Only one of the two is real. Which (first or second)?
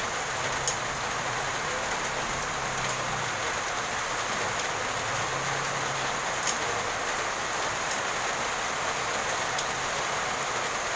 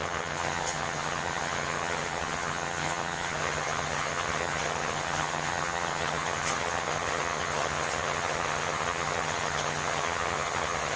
first